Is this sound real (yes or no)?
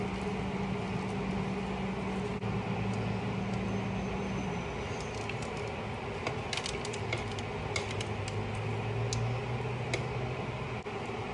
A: yes